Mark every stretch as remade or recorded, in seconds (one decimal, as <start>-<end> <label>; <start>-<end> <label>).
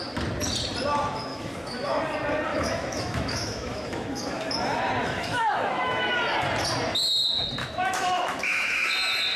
0.0-1.3 recorded; 1.3-2.0 remade; 2.0-2.5 recorded; 2.5-4.5 remade; 4.5-5.0 recorded; 5.0-6.0 remade; 6.0-7.6 recorded; 7.6-8.9 remade; 8.9-9.4 recorded